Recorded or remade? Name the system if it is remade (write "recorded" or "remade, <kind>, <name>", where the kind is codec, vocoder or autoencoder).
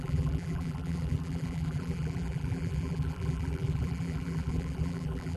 remade, vocoder, BigVGAN v2